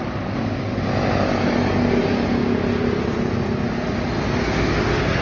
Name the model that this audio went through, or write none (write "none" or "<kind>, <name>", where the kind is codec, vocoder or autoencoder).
none